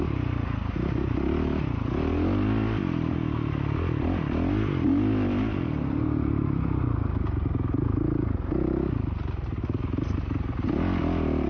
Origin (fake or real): real